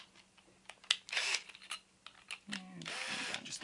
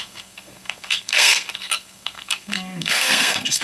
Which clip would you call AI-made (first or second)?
second